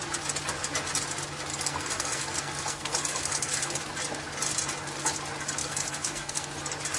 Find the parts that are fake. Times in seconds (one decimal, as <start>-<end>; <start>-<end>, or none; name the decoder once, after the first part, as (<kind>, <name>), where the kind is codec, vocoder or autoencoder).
1.5-3.8 (codec, SNAC); 5.6-6.5